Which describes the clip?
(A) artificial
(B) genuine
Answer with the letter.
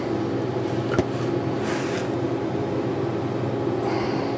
B